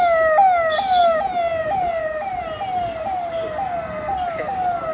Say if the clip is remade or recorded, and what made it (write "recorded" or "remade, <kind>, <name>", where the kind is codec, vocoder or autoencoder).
recorded